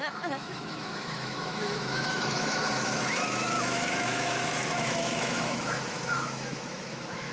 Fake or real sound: fake